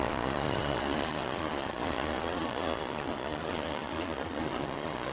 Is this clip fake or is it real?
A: fake